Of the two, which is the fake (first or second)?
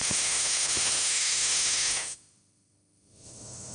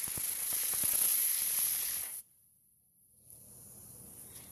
first